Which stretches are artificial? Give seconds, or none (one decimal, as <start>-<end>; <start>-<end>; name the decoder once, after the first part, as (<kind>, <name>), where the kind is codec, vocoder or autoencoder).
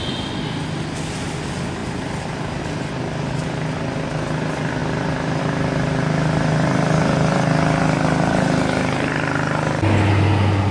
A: none